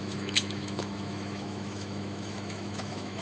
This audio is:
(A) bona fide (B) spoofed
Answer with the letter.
B